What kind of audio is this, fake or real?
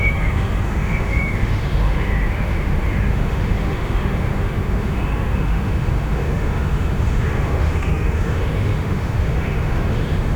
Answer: fake